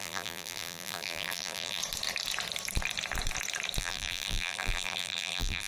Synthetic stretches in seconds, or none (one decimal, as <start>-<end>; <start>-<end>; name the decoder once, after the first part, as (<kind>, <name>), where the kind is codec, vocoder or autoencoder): 0.0-1.8 (vocoder, BigVGAN v2); 3.8-5.7